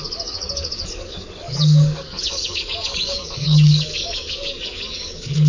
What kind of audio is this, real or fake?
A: fake